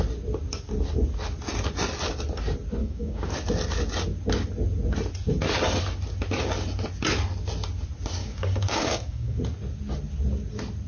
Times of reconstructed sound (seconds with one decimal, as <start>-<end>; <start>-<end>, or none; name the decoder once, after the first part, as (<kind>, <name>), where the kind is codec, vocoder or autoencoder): 2.8-3.3 (codec, DAC); 8.2-9.4